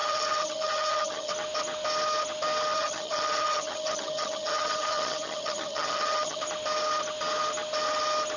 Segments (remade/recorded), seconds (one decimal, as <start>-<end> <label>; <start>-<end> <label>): 0.0-1.3 remade; 1.3-2.7 recorded; 2.7-6.4 remade; 6.4-8.4 recorded